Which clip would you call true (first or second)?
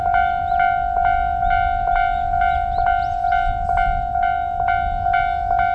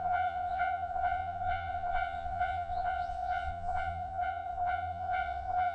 first